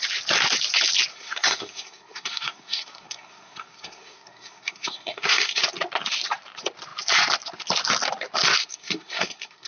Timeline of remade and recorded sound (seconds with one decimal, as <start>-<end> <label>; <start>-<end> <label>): 0.0-1.1 recorded; 1.1-5.6 remade; 5.6-8.6 recorded; 8.6-9.7 remade